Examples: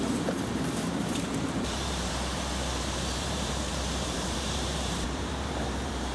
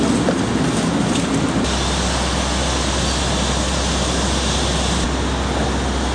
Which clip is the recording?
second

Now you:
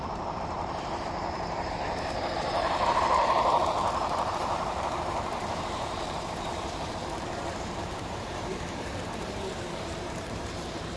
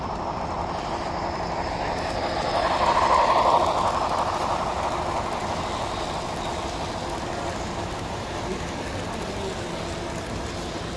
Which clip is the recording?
second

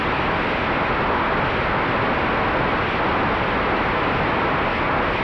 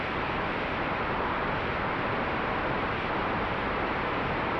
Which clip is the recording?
first